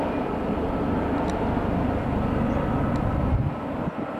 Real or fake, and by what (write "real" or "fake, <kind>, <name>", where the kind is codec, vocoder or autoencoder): real